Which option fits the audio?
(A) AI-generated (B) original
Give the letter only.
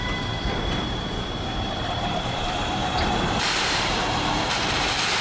A